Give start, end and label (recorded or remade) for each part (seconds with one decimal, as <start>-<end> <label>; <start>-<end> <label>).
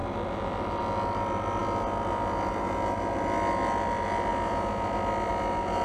0.0-0.8 remade; 0.8-4.3 recorded; 4.3-5.3 remade; 5.3-5.8 recorded